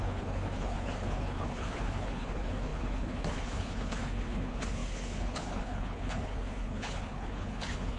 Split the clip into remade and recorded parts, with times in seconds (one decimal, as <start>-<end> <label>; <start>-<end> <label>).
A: 0.0-8.0 remade